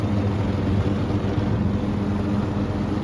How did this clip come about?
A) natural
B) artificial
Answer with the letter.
A